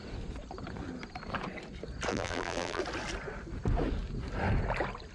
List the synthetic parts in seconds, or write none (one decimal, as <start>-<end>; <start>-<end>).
2.1-2.8